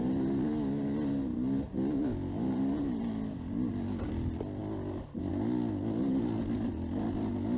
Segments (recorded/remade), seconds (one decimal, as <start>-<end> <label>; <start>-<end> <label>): 0.0-7.6 recorded